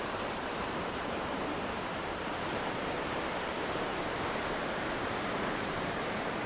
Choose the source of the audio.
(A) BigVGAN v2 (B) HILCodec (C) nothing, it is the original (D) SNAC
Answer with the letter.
A